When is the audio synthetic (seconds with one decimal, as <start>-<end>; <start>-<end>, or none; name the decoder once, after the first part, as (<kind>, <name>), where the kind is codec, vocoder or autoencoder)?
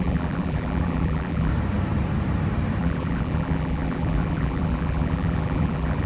0.0-1.5 (vocoder, BigVGAN v2); 2.8-6.1